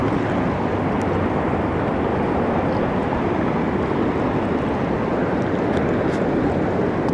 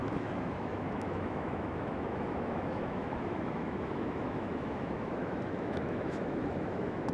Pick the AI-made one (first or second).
second